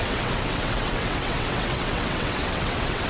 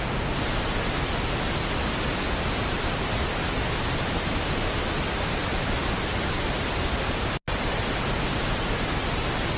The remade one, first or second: first